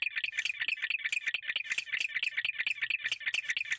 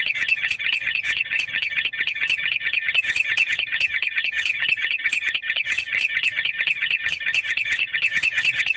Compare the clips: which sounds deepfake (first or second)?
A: second